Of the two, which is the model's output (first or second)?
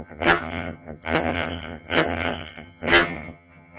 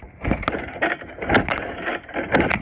first